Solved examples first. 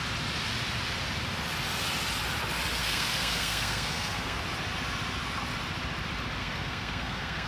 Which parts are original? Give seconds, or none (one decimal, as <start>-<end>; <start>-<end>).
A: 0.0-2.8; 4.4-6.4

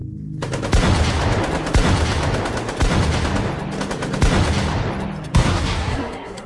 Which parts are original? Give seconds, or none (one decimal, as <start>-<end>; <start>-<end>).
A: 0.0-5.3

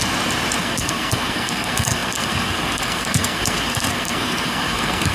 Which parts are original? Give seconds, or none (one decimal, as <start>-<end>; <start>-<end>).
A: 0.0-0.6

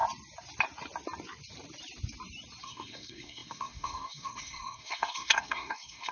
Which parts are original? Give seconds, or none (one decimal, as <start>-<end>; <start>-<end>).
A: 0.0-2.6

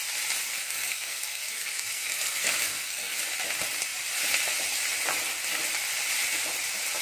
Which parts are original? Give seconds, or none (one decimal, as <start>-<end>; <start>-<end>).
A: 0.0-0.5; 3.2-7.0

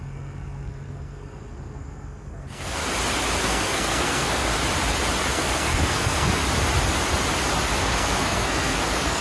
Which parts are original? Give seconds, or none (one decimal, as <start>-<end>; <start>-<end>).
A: 2.8-3.4; 4.5-5.3; 6.4-7.8